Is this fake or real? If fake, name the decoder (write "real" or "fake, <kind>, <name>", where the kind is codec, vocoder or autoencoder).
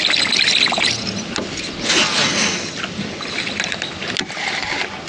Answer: real